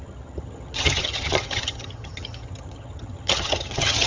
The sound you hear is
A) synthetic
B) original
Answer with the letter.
A